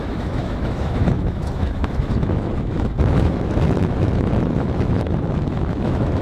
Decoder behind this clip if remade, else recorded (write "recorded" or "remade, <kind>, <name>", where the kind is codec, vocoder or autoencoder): remade, autoencoder, DAC-VAE